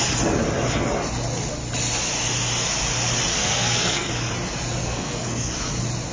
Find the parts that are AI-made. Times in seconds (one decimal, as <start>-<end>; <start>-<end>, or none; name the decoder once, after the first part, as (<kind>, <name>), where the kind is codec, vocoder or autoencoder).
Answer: 3.3-4.1 (codec, SNAC); 4.8-5.5